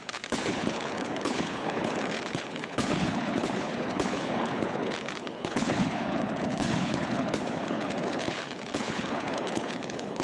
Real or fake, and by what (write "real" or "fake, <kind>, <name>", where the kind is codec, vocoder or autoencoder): fake, codec, HILCodec